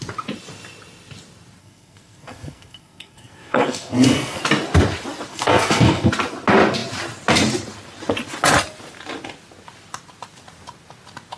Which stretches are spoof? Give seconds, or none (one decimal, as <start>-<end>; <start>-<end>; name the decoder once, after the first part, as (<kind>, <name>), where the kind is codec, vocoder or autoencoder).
1.6-4.4 (codec, SNAC); 5.3-6.1